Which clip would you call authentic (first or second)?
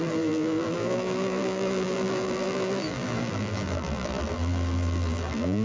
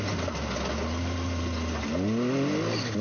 second